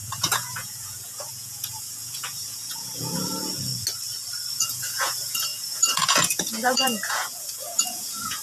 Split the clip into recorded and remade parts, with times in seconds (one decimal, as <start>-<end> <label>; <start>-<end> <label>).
0.0-3.7 remade; 3.7-4.5 recorded; 4.5-8.4 remade